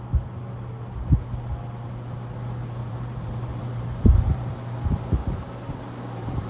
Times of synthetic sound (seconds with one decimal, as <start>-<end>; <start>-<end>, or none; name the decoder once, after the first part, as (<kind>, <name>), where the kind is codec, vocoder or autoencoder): 2.8-4.5 (vocoder, BigVGAN v2); 5.2-6.5